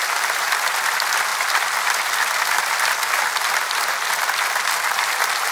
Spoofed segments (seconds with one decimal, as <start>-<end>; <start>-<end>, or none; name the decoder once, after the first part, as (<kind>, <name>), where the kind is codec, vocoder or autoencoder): none